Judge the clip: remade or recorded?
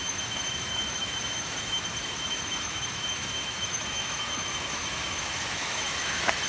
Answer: remade